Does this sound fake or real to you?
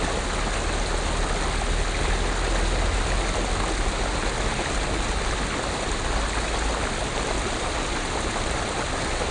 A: real